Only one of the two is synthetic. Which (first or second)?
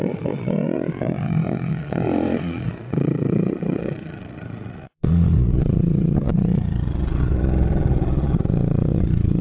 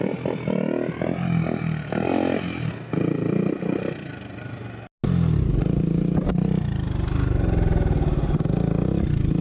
first